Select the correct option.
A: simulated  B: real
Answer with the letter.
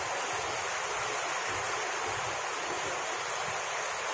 B